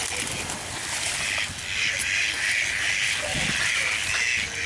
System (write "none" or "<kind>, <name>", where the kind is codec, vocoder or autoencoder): none